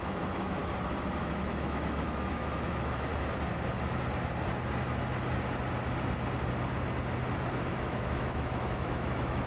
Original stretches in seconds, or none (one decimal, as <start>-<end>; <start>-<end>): 0.6-1.2; 3.1-7.5